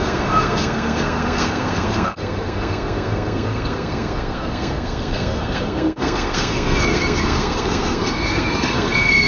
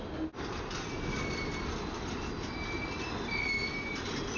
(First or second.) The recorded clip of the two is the second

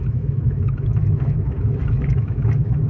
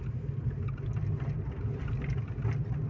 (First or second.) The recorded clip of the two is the second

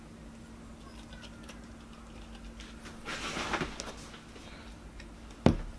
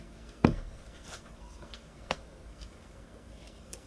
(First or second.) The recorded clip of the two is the first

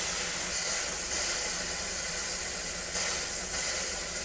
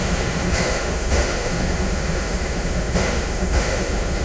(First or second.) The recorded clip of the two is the first